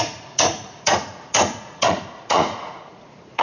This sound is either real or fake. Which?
fake